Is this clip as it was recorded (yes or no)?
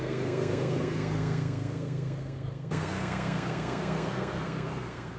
no